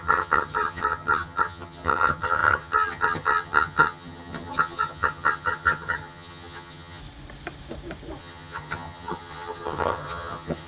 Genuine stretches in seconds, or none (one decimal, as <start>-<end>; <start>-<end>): 7.0-8.2